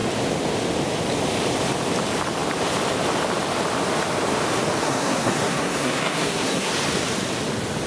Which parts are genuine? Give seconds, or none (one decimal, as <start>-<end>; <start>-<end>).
0.0-4.8; 6.7-7.9